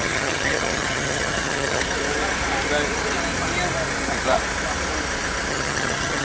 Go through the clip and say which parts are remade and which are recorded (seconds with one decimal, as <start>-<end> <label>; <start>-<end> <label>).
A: 0.0-1.8 remade; 1.8-5.5 recorded; 5.5-6.2 remade